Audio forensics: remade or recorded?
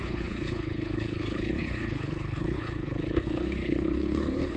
remade